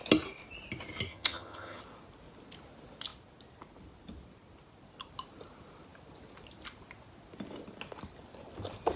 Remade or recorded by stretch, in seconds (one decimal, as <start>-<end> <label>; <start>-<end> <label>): 0.0-1.1 recorded; 1.1-1.8 remade; 1.8-9.0 recorded